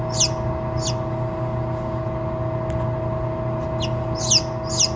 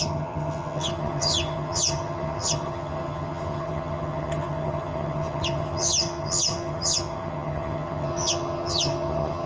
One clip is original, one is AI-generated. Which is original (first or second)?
first